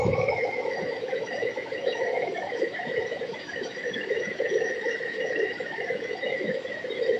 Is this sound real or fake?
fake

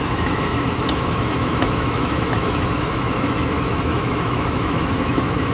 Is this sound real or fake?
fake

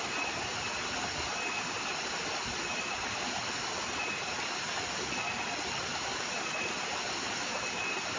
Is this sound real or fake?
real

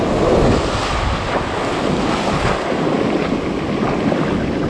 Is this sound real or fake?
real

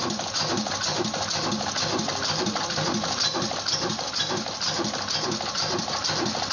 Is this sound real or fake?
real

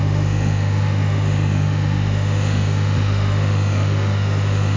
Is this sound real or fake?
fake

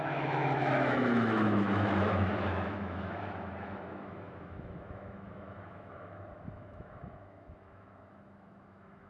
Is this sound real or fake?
fake